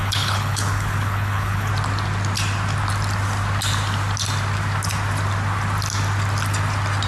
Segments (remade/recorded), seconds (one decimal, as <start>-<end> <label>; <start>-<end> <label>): 0.0-1.7 remade; 1.7-7.1 recorded